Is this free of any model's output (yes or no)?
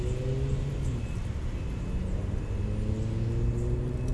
yes